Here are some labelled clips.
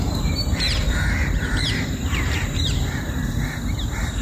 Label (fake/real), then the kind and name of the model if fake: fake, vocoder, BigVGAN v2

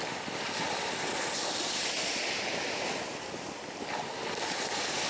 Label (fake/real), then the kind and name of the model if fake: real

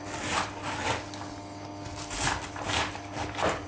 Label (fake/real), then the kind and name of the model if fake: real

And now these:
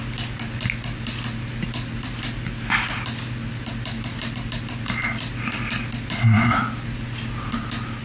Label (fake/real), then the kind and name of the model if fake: real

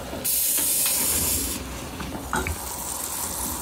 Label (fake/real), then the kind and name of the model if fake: real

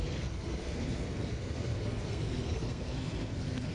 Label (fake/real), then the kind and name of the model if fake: fake, codec, SNAC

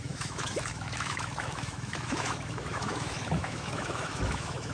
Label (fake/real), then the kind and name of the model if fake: fake, autoencoder, DAC-VAE